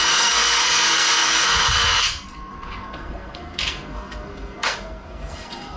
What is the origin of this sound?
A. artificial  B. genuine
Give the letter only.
A